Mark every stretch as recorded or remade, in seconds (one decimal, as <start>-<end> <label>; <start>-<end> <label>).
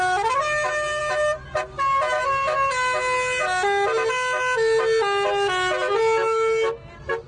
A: 0.0-7.3 recorded